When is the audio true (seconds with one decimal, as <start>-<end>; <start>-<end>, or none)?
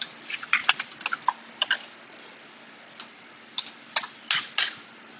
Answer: 0.0-5.2